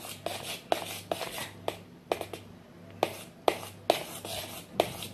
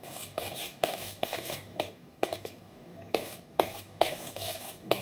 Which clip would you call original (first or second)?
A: first